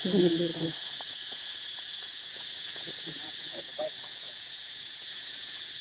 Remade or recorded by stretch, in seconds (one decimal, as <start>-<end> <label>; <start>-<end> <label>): 0.0-5.8 remade